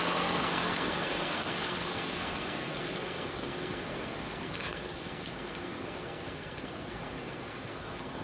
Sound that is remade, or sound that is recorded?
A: remade